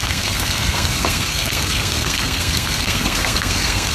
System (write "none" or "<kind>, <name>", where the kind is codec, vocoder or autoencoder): codec, SNAC